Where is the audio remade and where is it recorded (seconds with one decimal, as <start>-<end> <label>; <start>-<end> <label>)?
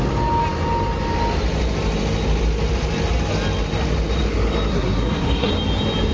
0.0-4.7 recorded; 4.7-5.5 remade; 5.5-6.1 recorded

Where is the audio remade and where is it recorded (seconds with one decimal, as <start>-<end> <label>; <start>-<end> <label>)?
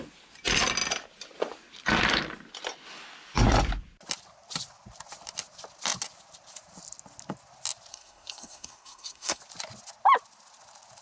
0.0-7.9 recorded; 7.9-9.4 remade; 9.4-11.0 recorded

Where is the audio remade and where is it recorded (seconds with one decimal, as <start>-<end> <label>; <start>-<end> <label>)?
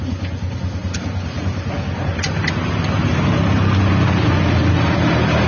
0.0-5.5 recorded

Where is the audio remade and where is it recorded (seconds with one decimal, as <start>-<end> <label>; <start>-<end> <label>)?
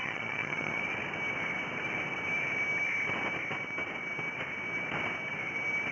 0.0-0.8 remade; 0.8-5.9 recorded